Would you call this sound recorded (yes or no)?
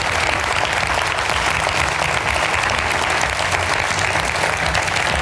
yes